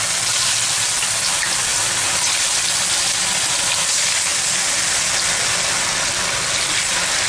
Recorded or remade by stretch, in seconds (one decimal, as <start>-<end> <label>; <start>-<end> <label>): 0.0-7.3 recorded